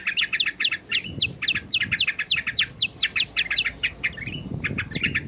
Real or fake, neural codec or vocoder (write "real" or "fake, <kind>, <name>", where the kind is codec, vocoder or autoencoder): real